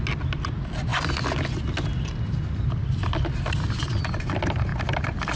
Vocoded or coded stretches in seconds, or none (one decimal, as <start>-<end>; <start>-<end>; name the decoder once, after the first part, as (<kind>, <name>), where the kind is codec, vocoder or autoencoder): none